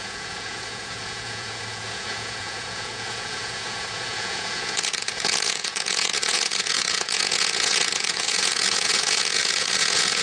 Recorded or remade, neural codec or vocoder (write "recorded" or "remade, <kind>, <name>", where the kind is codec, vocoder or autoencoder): remade, vocoder, Vocos